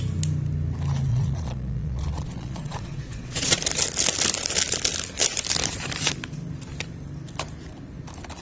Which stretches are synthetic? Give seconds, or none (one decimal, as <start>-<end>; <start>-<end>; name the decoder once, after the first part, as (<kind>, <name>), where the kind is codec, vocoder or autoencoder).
1.1-3.6 (vocoder, Vocos)